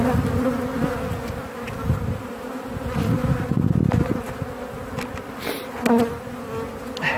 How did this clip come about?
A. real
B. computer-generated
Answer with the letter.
A